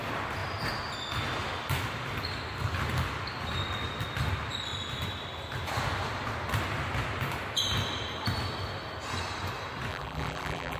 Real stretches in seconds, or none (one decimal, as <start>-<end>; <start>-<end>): 0.0-9.9